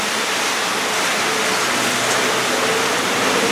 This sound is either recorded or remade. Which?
recorded